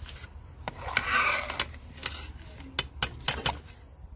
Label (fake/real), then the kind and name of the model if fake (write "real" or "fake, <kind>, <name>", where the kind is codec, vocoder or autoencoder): real